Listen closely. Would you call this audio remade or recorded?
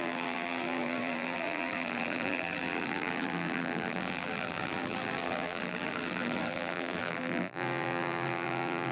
remade